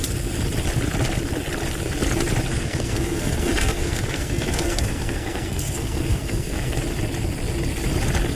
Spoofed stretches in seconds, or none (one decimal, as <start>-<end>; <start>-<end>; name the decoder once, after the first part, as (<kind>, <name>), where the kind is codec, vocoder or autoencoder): 2.5-6.8 (codec, SNAC)